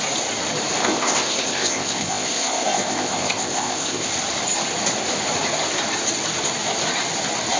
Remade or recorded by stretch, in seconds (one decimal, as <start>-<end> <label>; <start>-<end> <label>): 0.0-0.8 recorded; 0.8-4.1 remade; 4.1-7.6 recorded